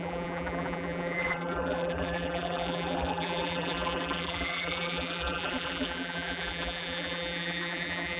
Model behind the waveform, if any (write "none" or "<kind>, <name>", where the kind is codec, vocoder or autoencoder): vocoder, BigVGAN v2